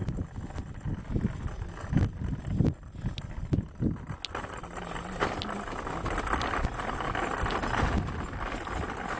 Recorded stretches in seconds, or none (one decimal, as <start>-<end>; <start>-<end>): 0.0-9.2